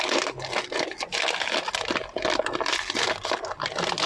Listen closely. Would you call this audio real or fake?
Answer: real